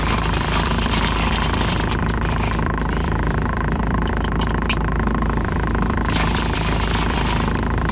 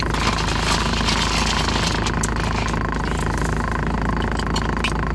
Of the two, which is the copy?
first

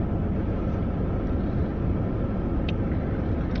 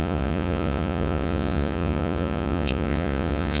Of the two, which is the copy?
second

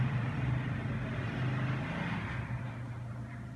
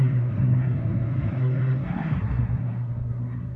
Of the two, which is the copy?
second